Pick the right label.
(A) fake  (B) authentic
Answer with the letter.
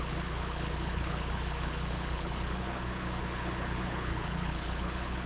A